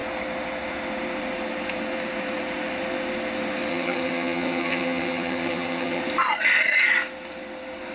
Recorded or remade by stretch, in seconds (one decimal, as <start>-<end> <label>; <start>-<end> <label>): 0.0-3.7 recorded; 3.7-6.0 remade; 6.0-7.9 recorded